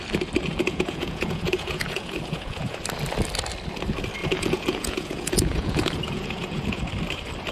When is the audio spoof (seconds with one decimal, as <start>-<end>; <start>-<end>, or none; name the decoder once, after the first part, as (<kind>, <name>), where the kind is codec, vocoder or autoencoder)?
0.4-2.8 (vocoder, Vocos); 4.2-6.8